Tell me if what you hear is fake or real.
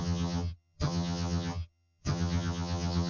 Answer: fake